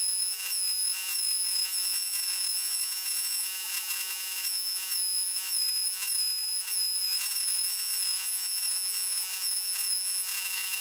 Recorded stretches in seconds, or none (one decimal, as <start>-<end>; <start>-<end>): none